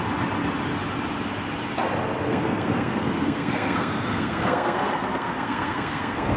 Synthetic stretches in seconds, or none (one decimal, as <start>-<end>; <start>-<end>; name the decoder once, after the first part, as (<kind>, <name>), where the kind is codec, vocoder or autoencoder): 2.3-6.4 (codec, SNAC)